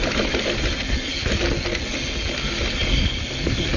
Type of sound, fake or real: real